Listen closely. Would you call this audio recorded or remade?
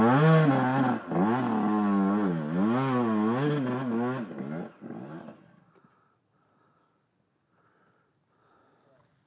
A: recorded